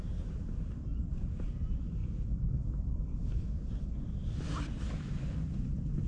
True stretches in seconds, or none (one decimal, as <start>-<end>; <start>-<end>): 2.0-4.9